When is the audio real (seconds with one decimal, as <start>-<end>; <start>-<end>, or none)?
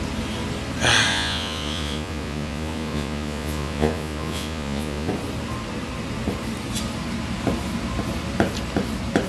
0.0-1.1; 5.1-9.3